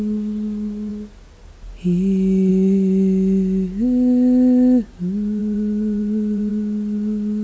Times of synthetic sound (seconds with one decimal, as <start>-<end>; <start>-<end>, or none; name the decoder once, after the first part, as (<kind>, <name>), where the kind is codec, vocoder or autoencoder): 5.4-6.5 (vocoder, BigVGAN v2)